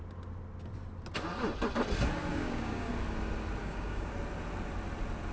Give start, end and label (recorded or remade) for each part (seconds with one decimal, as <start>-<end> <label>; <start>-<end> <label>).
0.0-2.3 recorded; 2.3-2.9 remade; 2.9-3.6 recorded; 3.6-4.1 remade; 4.1-5.3 recorded